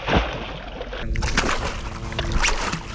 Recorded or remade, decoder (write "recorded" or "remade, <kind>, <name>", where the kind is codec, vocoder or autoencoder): recorded